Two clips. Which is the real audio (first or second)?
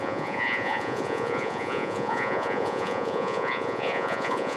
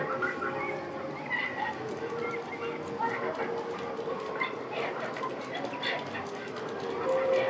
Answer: second